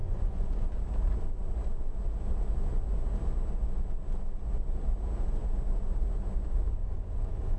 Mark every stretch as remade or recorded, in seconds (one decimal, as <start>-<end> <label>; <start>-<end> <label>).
0.0-0.8 remade; 0.8-6.8 recorded; 6.8-7.6 remade

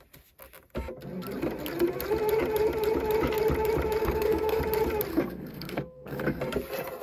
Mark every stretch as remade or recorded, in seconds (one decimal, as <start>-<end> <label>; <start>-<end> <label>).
0.0-4.0 recorded; 4.0-4.6 remade; 4.6-5.1 recorded; 5.1-6.4 remade; 6.4-7.0 recorded

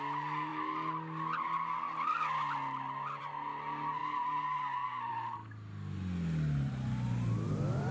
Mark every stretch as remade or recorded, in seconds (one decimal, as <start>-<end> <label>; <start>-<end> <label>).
0.0-7.9 recorded

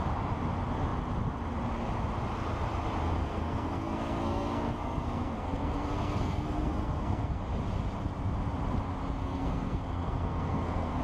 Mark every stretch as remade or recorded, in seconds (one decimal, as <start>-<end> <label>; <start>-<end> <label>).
0.0-3.2 recorded; 3.2-7.4 remade; 7.4-9.2 recorded; 9.2-11.0 remade